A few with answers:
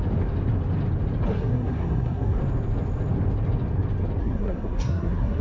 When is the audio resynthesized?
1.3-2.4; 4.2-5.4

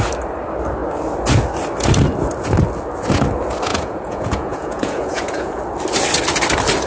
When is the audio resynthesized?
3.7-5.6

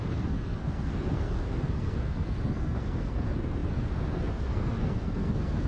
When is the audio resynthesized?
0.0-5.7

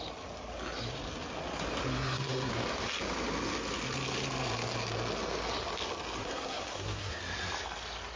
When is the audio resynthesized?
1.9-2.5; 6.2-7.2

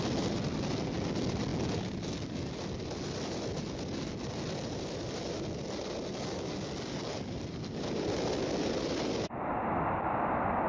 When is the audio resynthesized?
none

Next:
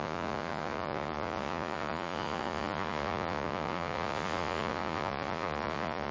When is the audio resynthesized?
0.0-6.1

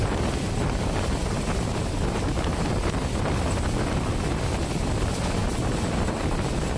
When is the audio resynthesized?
none